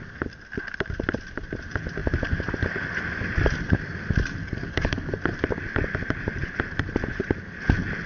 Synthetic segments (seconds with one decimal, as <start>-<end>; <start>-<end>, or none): 4.4-5.1